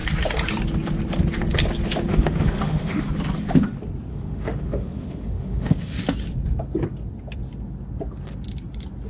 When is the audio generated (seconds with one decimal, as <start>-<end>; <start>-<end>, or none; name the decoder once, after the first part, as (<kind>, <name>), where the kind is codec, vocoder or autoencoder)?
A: 2.1-3.0 (autoencoder, DAC-VAE); 4.1-6.0